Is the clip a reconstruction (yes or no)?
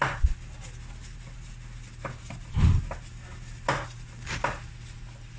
no